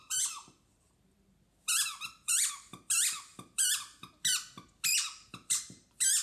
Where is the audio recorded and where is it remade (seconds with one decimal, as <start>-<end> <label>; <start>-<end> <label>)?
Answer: 0.0-2.5 remade; 2.5-3.3 recorded; 3.3-4.2 remade; 4.2-5.0 recorded; 5.0-5.6 remade; 5.6-6.2 recorded